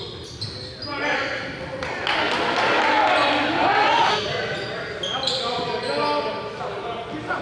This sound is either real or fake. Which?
real